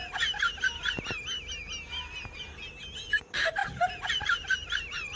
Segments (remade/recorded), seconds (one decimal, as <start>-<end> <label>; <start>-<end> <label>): 0.0-3.1 recorded; 3.1-3.6 remade; 3.6-4.1 recorded; 4.1-5.2 remade